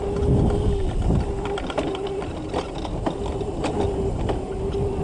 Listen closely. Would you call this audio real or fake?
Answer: real